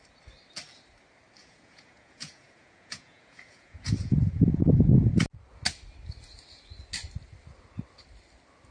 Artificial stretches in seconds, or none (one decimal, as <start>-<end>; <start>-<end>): 1.4-5.1